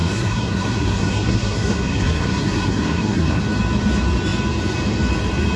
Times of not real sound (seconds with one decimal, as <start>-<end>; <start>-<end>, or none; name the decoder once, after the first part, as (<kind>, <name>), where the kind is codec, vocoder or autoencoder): 0.0-3.4 (codec, SNAC)